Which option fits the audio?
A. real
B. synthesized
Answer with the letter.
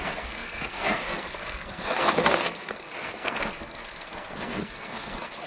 B